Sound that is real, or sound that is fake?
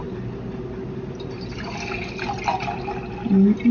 real